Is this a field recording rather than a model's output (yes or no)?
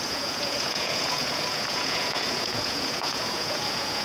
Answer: no